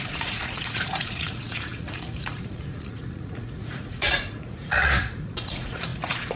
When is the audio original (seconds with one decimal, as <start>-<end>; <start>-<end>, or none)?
none